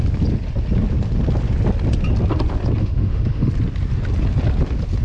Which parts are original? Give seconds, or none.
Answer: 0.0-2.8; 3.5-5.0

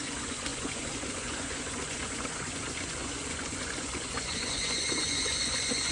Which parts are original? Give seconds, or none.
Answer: none

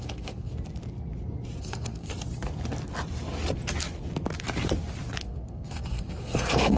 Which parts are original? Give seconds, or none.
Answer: 0.5-1.6; 2.1-5.2

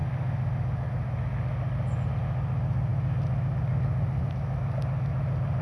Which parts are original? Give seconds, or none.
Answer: 0.0-5.6

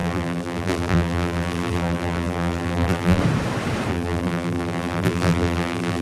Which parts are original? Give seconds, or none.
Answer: 3.2-3.9